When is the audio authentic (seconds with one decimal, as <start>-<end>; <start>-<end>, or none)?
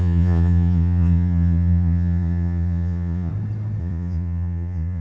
3.3-3.8